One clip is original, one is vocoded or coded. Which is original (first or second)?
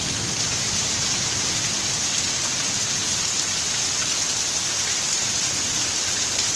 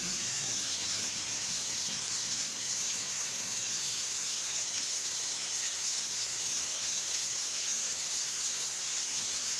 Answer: first